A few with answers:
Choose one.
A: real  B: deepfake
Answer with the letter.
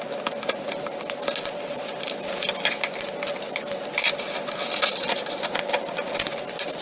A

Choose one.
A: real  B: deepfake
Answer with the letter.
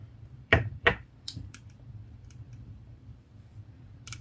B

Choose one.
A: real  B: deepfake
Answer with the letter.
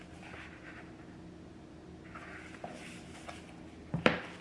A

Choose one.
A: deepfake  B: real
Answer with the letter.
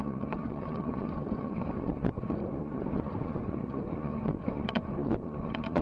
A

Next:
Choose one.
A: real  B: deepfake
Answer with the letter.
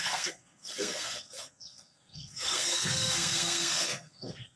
B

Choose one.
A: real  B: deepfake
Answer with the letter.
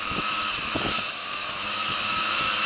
B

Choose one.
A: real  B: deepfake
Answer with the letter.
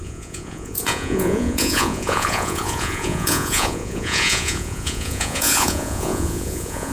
B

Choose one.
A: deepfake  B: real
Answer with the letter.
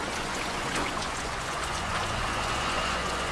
A